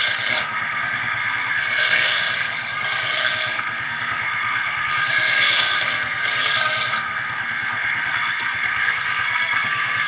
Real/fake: fake